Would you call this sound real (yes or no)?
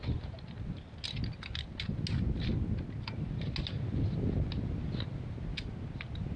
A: yes